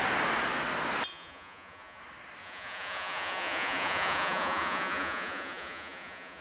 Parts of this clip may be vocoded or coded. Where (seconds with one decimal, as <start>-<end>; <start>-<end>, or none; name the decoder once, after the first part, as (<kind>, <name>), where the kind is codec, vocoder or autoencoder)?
1.1-2.0 (vocoder, Vocos); 2.4-6.4